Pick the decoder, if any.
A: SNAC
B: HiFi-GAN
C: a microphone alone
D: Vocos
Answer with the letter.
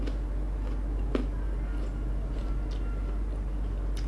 C